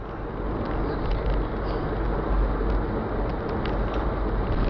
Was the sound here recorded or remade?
recorded